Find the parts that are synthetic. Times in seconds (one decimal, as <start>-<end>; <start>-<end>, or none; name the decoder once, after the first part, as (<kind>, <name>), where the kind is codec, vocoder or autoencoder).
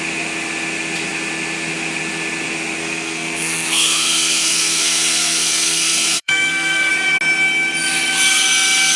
2.8-6.9 (codec, SNAC)